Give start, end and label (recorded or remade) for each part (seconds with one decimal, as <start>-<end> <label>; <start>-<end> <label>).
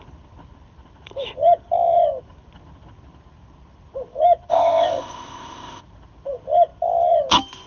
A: 0.0-4.5 recorded; 4.5-5.8 remade; 5.8-7.7 recorded